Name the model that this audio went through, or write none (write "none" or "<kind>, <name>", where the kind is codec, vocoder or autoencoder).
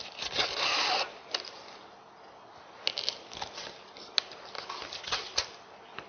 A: none